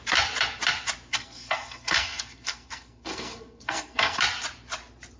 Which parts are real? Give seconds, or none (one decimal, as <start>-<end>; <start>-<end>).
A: 0.0-1.1; 4.2-5.2